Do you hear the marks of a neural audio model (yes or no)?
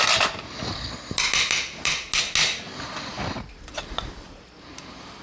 no